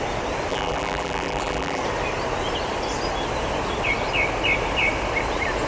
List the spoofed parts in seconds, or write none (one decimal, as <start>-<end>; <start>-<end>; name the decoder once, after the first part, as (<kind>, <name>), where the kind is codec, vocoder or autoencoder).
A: 0.5-1.8 (vocoder, BigVGAN v2)

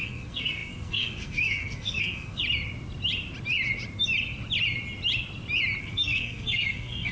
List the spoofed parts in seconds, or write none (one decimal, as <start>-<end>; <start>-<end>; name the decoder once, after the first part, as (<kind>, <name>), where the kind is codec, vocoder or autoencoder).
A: 0.0-2.4 (codec, SNAC); 5.8-7.1

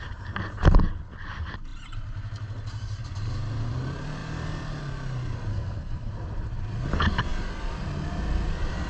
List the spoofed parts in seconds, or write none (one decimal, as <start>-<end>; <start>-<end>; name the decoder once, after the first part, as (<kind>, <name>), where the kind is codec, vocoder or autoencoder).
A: 5.5-6.1 (codec, SNAC)

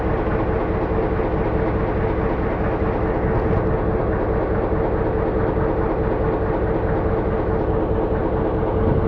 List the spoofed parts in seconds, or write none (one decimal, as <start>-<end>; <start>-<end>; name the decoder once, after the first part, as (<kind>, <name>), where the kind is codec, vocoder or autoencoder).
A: none

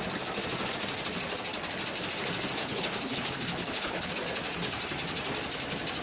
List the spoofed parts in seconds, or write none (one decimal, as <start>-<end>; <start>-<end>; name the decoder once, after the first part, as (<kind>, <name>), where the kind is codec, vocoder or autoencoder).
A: 2.6-4.1 (codec, HILCodec)

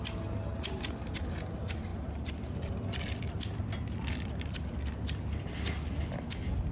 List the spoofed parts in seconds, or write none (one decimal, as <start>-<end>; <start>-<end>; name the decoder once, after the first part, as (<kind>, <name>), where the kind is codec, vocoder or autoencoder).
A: 1.9-3.6 (vocoder, BigVGAN v2)

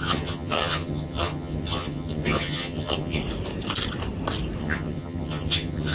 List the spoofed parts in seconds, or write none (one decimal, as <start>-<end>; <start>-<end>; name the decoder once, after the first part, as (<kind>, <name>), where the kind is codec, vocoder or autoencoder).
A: 0.0-3.2 (vocoder, HiFi-GAN); 4.6-5.9